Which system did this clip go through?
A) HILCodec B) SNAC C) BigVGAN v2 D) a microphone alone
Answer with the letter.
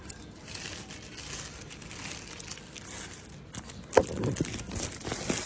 D